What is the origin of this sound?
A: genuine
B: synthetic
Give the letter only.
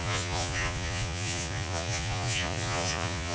B